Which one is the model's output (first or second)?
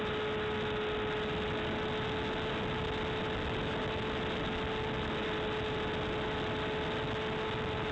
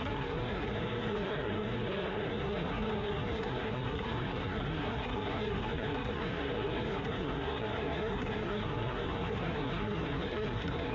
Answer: second